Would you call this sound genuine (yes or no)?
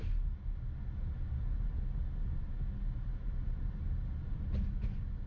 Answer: yes